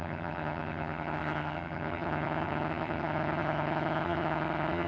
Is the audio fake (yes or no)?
yes